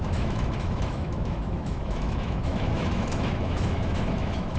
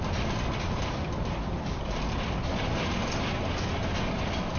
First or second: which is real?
second